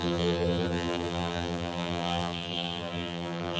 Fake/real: fake